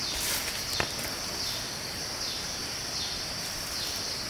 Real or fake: real